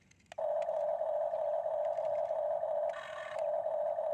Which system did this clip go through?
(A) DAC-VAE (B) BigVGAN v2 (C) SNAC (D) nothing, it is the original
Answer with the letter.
D